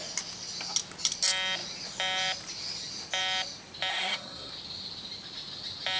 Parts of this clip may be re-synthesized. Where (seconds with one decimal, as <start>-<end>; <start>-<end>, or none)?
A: 3.9-4.5